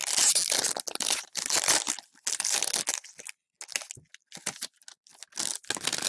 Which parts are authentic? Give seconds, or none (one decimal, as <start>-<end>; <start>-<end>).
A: 0.0-6.1